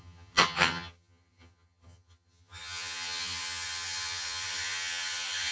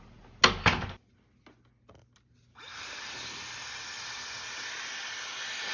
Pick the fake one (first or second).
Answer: first